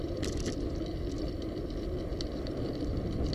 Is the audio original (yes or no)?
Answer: yes